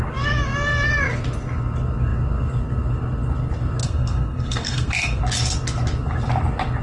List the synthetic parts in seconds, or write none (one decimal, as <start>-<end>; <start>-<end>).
3.8-5.2